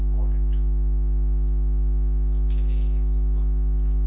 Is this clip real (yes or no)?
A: yes